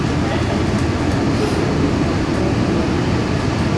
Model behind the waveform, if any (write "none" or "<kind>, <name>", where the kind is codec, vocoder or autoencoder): none